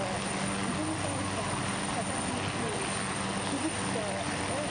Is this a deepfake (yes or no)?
no